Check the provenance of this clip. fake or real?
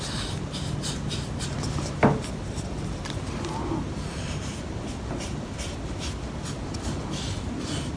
real